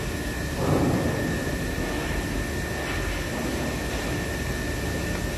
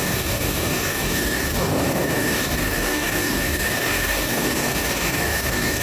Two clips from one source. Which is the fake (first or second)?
second